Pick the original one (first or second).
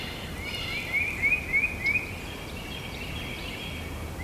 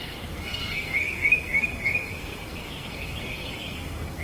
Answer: first